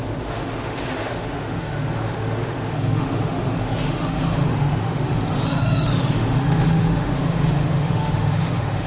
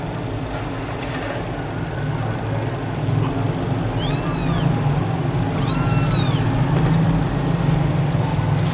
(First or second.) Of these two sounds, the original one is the second